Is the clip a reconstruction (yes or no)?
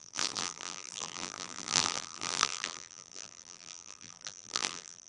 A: yes